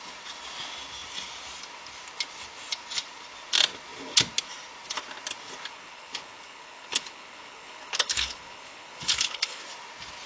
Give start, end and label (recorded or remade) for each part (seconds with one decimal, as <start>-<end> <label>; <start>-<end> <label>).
0.0-5.7 recorded; 5.7-9.6 remade; 9.6-10.3 recorded

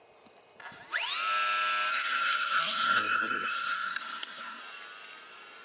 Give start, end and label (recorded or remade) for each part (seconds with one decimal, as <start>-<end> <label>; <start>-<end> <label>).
0.0-1.9 recorded; 1.9-4.6 remade; 4.6-5.6 recorded